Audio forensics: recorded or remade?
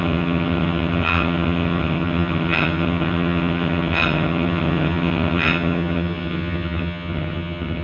remade